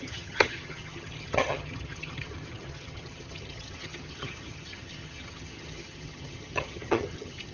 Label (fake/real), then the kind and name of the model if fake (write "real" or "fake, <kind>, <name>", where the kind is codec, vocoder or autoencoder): fake, vocoder, HiFi-GAN